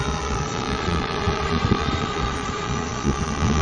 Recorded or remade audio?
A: remade